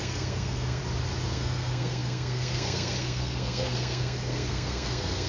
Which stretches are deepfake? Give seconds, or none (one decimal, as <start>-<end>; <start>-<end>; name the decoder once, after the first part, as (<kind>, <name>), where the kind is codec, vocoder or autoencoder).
0.0-0.8 (codec, SNAC); 1.3-5.3